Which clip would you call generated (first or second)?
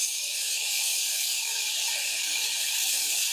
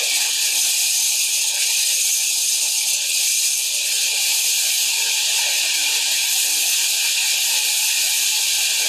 first